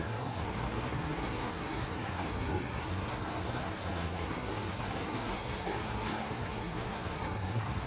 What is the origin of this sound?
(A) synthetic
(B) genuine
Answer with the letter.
A